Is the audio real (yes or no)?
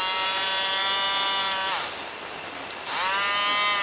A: yes